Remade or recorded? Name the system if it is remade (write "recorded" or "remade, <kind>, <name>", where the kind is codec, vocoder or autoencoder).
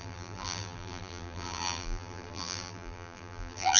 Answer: remade, vocoder, BigVGAN v2